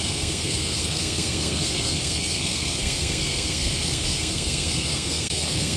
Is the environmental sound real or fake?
fake